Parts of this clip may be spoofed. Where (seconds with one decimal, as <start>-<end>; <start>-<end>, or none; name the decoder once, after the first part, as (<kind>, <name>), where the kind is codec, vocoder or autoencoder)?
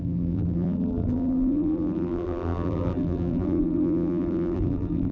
0.0-5.1 (vocoder, BigVGAN v2)